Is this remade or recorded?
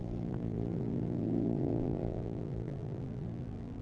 remade